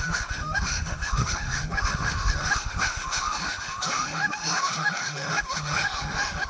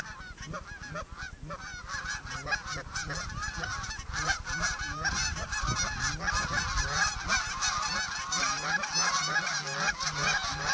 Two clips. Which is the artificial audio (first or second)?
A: first